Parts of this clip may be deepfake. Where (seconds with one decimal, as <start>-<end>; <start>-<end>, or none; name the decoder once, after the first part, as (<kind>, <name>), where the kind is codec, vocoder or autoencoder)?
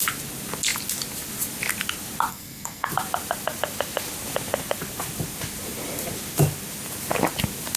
2.3-2.9 (codec, SNAC)